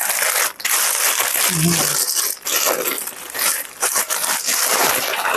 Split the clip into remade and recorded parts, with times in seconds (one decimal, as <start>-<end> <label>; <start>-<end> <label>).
0.0-3.2 recorded; 3.2-5.4 remade